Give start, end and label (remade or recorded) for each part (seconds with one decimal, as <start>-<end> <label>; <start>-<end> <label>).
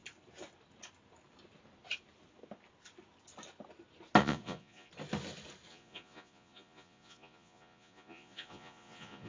0.0-4.2 recorded; 4.2-4.9 remade; 4.9-5.7 recorded; 5.7-9.3 remade